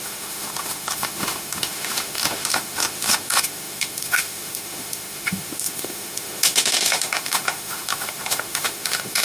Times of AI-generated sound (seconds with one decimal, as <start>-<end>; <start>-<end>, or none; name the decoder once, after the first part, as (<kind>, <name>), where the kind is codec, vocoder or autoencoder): 0.0-9.2 (autoencoder, DAC-VAE)